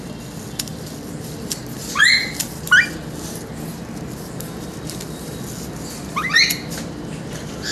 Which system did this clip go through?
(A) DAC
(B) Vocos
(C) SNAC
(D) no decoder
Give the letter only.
D